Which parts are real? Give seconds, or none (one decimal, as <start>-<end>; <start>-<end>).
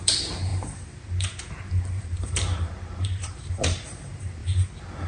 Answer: 4.4-5.1